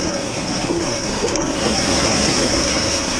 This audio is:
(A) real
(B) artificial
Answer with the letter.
B